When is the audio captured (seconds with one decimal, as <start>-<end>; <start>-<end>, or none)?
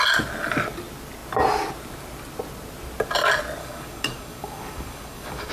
0.0-3.6